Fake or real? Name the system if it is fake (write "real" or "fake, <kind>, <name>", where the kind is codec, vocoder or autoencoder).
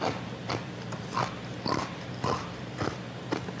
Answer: fake, vocoder, BigVGAN v2